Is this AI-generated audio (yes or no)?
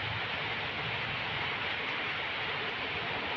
no